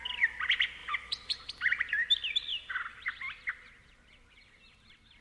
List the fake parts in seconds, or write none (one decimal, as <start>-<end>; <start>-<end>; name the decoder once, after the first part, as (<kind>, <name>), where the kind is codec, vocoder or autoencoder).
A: 0.8-1.5 (vocoder, BigVGAN v2); 2.5-3.7